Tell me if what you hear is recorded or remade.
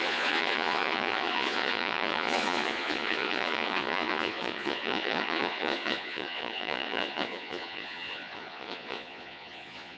remade